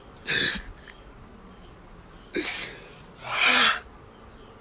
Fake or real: real